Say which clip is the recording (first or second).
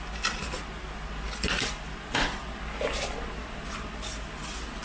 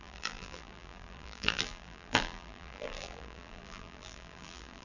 first